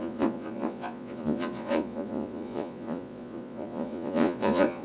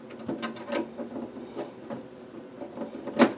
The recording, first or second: second